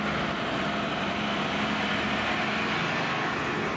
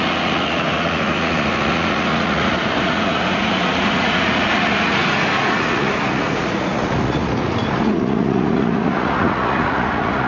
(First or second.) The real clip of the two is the first